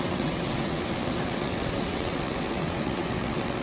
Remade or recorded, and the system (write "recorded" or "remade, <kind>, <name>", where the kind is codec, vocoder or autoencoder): remade, vocoder, WaveNeXt